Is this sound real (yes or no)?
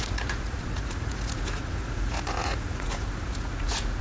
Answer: no